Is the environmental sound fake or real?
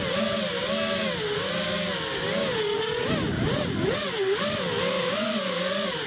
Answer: real